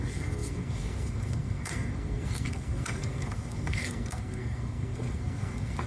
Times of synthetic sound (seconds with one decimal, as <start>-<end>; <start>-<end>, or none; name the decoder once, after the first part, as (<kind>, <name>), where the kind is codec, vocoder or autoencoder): 0.0-5.9 (codec, SNAC)